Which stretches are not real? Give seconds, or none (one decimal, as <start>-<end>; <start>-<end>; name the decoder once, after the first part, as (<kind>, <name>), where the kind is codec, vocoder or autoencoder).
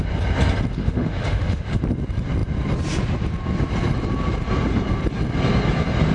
0.8-1.8 (autoencoder, DAC-VAE)